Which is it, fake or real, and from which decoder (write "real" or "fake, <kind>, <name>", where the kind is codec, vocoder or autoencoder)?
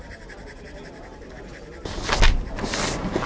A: real